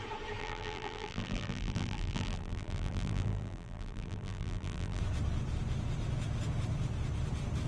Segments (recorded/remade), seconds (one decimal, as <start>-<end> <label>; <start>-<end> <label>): 0.0-0.4 recorded; 0.4-5.0 remade; 5.0-7.7 recorded